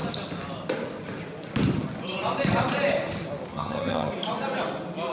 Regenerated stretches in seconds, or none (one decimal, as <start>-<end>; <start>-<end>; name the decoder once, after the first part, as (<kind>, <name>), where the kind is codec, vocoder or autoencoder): 3.5-4.1 (vocoder, HiFi-GAN)